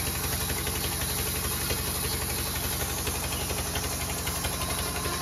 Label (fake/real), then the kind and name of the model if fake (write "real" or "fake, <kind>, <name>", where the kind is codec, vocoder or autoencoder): real